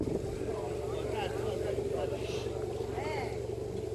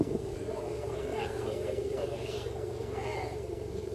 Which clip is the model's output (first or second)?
second